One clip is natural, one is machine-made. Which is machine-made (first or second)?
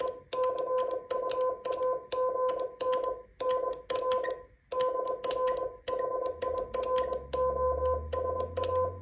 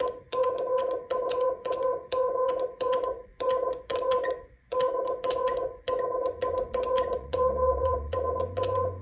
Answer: second